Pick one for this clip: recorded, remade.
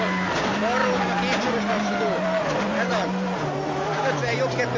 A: recorded